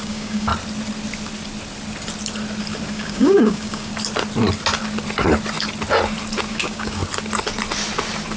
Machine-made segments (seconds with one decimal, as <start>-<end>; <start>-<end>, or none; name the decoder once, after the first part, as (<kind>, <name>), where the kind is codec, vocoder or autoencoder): 0.0-0.5 (codec, DAC); 2.9-3.9; 6.5-7.0